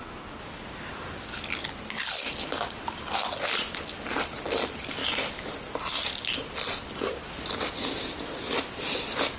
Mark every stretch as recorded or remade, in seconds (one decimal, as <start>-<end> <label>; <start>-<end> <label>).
0.0-9.4 recorded